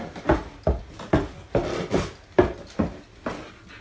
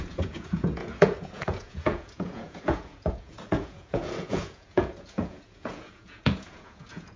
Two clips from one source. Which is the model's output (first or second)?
second